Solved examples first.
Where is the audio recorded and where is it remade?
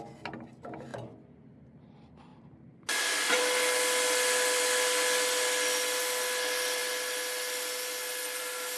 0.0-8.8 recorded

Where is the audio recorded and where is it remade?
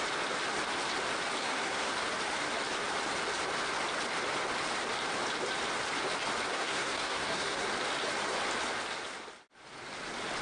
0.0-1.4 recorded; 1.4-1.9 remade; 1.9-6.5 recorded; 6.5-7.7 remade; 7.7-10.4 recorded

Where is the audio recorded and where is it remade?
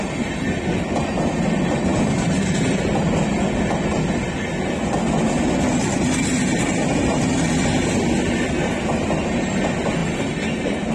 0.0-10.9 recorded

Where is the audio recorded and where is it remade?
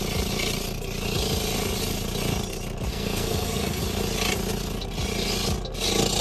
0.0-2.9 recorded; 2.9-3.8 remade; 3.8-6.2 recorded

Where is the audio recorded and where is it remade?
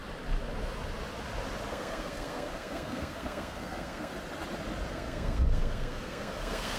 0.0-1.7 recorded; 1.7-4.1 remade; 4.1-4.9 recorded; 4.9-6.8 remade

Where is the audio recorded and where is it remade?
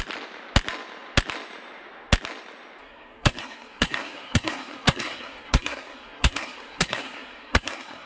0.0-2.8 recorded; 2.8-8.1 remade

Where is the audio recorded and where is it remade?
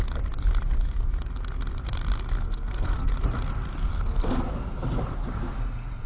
0.0-2.4 recorded; 2.4-3.1 remade; 3.1-3.9 recorded; 3.9-4.4 remade; 4.4-6.1 recorded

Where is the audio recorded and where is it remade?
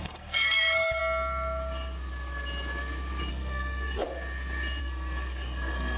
0.0-1.0 remade; 1.0-3.3 recorded; 3.3-4.0 remade; 4.0-4.8 recorded; 4.8-6.0 remade